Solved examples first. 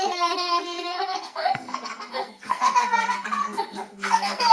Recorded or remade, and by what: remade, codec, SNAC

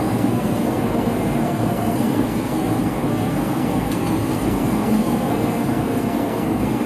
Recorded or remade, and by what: remade, codec, SNAC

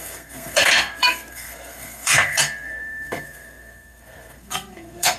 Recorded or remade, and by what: remade, codec, SNAC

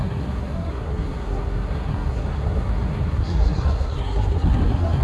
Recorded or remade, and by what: remade, codec, SNAC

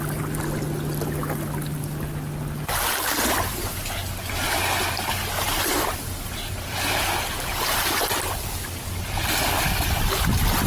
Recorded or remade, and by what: recorded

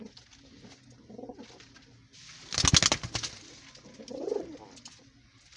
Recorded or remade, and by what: recorded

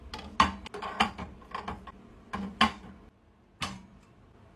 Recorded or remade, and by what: recorded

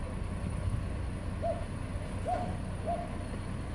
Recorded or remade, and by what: recorded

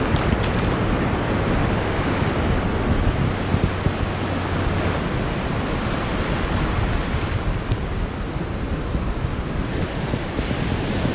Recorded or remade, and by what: recorded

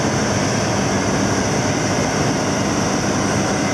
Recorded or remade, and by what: recorded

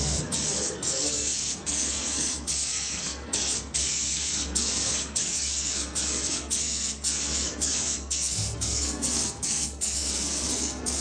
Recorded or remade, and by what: remade, codec, SNAC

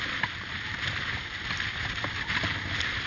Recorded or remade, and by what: recorded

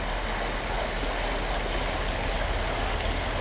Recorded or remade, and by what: recorded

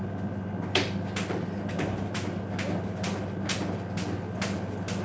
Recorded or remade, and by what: recorded